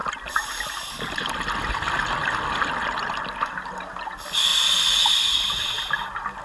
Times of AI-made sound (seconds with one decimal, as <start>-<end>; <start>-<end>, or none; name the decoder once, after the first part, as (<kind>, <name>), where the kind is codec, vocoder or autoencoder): none